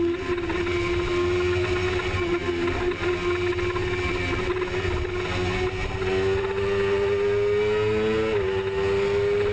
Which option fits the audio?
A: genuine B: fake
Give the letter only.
A